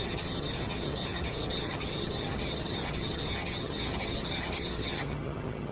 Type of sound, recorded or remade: remade